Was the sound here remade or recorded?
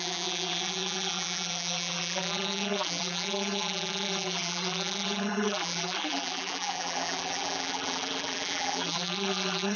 remade